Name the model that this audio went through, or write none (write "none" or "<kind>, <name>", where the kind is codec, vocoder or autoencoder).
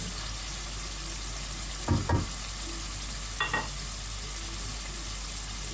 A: none